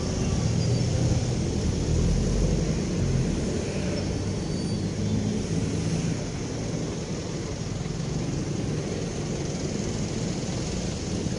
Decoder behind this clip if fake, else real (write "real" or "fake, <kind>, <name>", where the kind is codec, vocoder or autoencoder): real